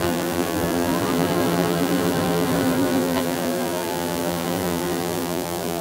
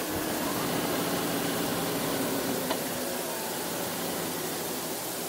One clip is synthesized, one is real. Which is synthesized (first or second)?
first